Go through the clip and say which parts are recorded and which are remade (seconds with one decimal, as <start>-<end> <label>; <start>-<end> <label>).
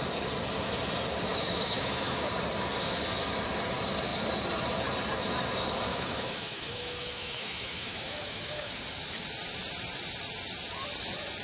0.0-1.3 recorded; 1.3-2.3 remade; 2.3-5.9 recorded; 5.9-8.7 remade; 8.7-11.4 recorded